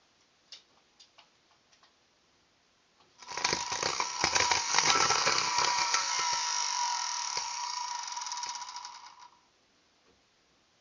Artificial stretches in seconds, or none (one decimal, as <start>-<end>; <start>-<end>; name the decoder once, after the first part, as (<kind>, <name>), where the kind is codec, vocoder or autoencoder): 3.9-6.1 (codec, SNAC); 7.4-7.9

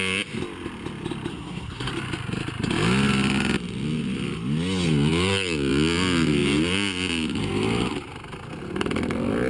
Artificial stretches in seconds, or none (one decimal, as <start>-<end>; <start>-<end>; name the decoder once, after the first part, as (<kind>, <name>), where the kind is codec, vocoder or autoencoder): 1.3-1.9 (codec, SNAC)

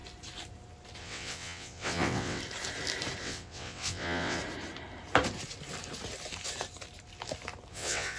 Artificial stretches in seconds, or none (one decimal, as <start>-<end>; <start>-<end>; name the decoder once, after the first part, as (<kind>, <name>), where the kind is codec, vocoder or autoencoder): 1.0-2.4 (vocoder, WaveNeXt); 3.2-4.4; 7.7-8.2

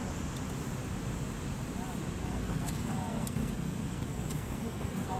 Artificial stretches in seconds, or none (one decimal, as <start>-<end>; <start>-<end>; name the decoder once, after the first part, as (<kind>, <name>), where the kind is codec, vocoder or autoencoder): 2.2-5.2 (codec, SNAC)

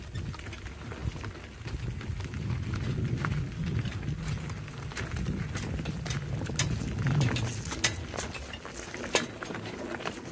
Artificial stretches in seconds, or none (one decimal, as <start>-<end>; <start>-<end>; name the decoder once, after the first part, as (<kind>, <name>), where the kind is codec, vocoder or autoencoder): none

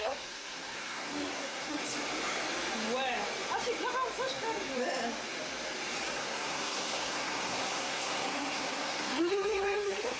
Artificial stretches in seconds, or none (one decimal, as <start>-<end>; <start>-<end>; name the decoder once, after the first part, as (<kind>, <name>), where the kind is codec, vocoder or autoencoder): 0.0-1.8 (codec, SNAC); 6.2-10.2